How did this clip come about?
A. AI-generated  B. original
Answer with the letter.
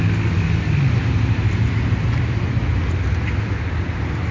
B